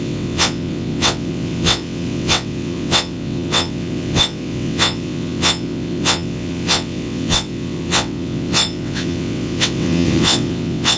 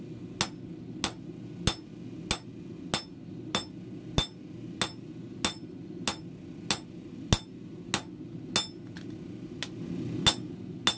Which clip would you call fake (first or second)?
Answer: first